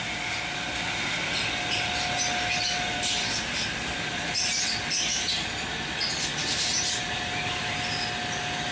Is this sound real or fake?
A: real